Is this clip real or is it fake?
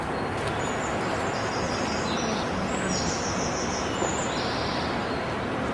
real